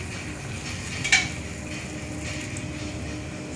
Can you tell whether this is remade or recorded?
recorded